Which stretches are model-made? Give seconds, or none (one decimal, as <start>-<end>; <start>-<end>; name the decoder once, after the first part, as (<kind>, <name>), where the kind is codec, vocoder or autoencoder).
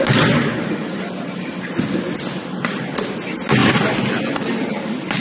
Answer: none